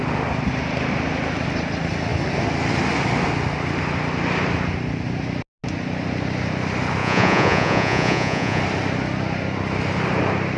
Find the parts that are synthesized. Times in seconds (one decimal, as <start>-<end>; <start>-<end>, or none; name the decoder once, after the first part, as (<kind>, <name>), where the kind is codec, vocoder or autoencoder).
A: 7.0-8.6 (vocoder, Vocos)